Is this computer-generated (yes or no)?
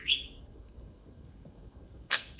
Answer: yes